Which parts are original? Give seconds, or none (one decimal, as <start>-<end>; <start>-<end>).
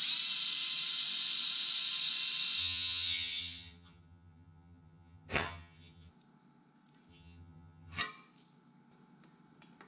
0.0-2.6; 6.1-7.1; 8.0-9.9